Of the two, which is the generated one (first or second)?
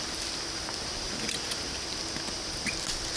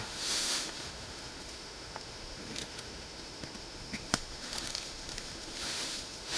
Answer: second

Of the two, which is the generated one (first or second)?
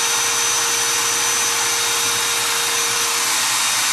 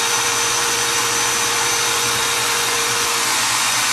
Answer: second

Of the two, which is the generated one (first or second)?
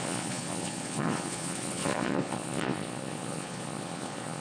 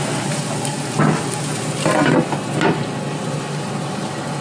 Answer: first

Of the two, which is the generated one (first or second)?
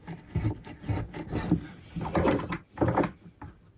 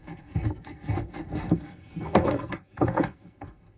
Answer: second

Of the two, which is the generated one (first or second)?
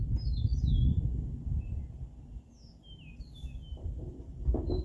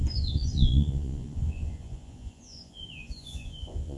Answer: second